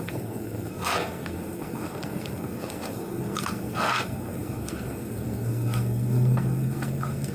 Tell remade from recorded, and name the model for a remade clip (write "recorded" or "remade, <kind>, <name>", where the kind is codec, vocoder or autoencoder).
remade, codec, SNAC